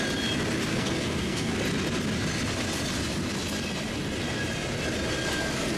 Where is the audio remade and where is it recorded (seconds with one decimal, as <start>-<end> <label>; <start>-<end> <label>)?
0.0-0.7 recorded; 0.7-1.5 remade; 1.5-5.8 recorded